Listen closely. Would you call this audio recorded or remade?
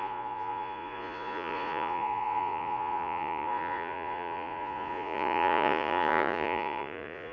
remade